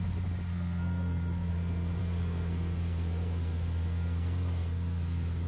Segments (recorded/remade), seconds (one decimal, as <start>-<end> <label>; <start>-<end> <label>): 0.0-0.5 recorded; 0.5-1.5 remade; 1.5-2.0 recorded; 2.0-5.5 remade